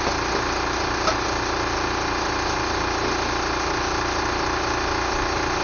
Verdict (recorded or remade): recorded